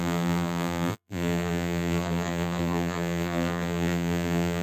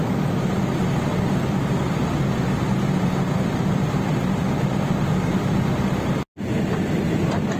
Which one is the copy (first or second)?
first